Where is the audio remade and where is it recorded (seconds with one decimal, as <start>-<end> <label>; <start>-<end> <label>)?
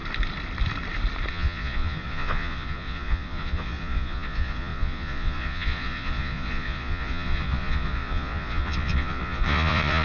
0.0-1.3 recorded; 1.3-10.0 remade